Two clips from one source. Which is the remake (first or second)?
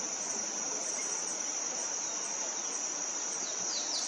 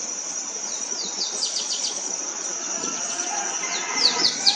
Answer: second